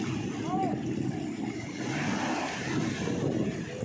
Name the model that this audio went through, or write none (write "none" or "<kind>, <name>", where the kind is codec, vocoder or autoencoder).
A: none